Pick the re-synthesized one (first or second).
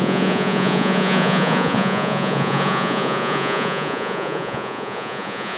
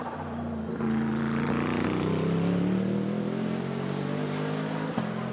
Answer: first